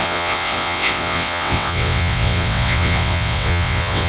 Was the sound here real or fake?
fake